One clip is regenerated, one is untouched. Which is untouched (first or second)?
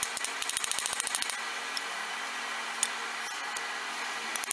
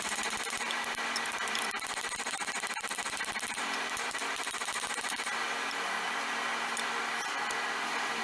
first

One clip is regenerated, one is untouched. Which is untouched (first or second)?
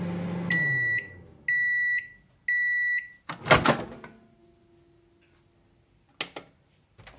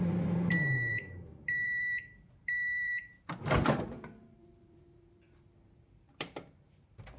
first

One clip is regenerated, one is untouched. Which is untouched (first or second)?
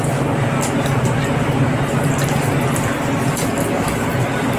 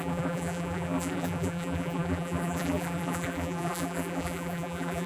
first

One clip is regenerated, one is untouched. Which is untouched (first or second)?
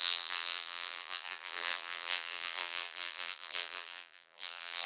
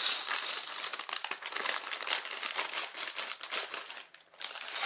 second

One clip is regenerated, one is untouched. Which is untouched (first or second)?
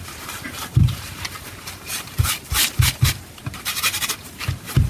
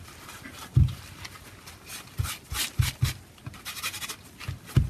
second